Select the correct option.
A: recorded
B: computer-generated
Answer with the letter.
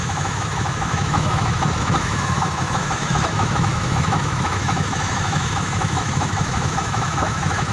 B